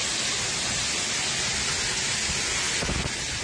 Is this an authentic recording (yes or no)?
yes